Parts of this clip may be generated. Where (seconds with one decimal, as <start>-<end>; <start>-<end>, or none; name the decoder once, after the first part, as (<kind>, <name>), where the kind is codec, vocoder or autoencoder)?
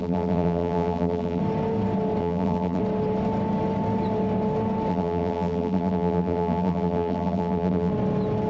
0.0-1.4 (vocoder, BigVGAN v2); 2.2-2.8; 4.9-7.9